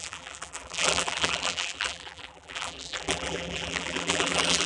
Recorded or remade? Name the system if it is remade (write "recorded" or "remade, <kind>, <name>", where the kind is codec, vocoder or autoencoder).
remade, vocoder, BigVGAN v2